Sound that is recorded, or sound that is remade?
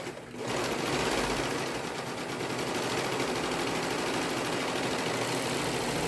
recorded